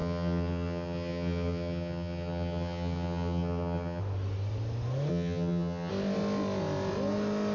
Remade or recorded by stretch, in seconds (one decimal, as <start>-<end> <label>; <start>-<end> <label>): 0.0-4.0 remade; 4.0-5.1 recorded; 5.1-5.9 remade; 5.9-7.5 recorded